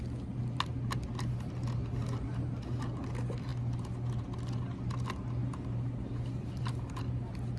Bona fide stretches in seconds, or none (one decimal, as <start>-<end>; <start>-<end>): 0.0-5.4; 7.0-7.6